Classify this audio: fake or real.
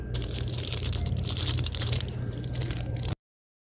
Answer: fake